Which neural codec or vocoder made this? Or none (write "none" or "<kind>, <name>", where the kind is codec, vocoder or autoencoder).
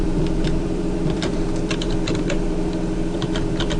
vocoder, BigVGAN v2